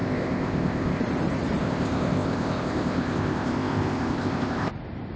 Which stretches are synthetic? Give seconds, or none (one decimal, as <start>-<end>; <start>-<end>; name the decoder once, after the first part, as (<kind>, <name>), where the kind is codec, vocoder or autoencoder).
0.0-1.0 (codec, ZipCodec); 1.6-4.7